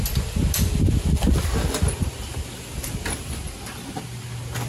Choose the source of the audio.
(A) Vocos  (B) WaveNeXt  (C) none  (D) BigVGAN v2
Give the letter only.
C